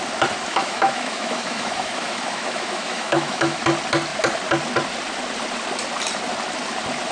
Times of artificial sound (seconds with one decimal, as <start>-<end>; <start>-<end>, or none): 0.5-3.6